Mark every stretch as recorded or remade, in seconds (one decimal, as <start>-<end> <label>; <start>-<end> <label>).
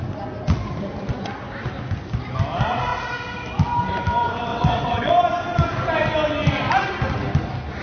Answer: 0.0-4.5 recorded; 4.5-5.1 remade; 5.1-7.8 recorded